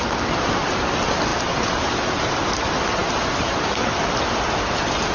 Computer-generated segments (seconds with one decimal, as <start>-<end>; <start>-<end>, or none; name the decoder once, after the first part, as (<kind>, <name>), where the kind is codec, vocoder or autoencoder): 1.3-2.3 (vocoder, BigVGAN v2); 3.0-3.5